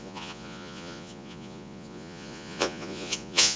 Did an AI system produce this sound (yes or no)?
yes